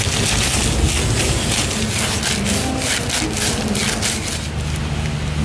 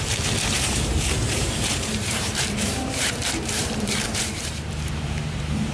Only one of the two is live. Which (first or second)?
first